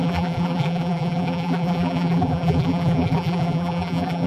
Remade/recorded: remade